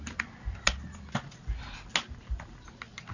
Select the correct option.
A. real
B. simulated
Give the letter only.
A